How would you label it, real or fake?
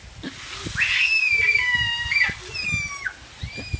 real